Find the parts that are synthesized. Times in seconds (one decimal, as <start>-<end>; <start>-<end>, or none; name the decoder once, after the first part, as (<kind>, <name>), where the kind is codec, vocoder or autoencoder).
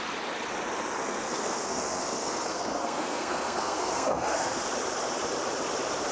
1.0-4.7 (codec, SNAC)